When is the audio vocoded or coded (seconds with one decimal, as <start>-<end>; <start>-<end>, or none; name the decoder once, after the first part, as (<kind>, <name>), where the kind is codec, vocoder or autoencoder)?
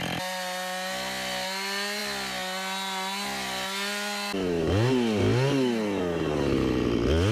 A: none